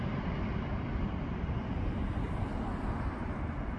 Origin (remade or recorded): recorded